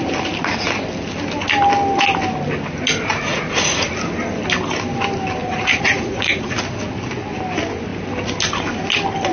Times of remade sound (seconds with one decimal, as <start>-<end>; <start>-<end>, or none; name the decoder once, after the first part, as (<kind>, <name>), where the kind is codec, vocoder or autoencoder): 3.3-3.9 (vocoder, Vocos); 5.4-6.5